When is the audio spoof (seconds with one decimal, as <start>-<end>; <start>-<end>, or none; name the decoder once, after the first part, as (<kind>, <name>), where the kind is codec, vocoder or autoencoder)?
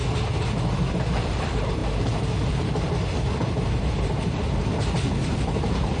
0.9-1.8 (vocoder, BigVGAN v2); 3.3-6.0